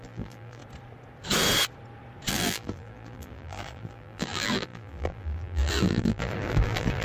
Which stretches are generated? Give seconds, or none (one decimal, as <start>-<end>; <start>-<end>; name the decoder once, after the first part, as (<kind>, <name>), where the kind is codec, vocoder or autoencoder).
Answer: 0.0-0.6 (vocoder, BigVGAN v2); 2.3-7.0